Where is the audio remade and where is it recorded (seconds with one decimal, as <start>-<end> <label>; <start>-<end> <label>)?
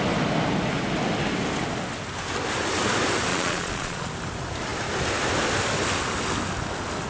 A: 0.0-3.3 recorded; 3.3-4.1 remade; 4.1-7.1 recorded